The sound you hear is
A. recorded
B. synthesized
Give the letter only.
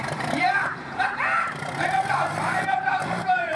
B